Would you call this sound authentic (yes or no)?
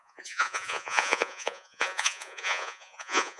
no